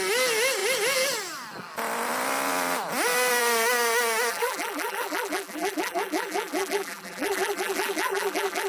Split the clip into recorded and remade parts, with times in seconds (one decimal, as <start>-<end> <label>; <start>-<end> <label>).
0.0-4.3 recorded; 4.3-8.7 remade